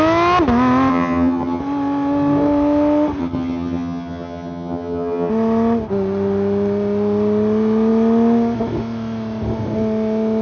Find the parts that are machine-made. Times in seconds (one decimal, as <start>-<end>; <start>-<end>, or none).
0.9-1.6; 3.2-5.3